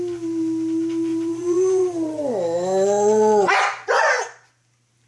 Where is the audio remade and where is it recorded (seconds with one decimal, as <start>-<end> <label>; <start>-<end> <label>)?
0.0-1.1 recorded; 1.1-4.2 remade; 4.2-5.1 recorded